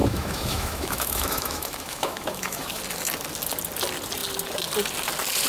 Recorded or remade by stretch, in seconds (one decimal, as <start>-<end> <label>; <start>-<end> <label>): 0.0-2.8 remade; 2.8-5.5 recorded